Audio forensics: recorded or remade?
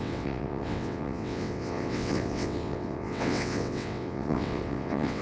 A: remade